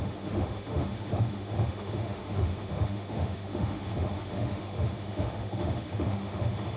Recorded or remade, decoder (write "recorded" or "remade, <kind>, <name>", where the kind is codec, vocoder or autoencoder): remade, autoencoder, DAC-VAE